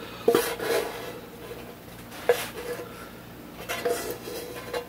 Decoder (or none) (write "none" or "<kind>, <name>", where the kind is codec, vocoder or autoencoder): none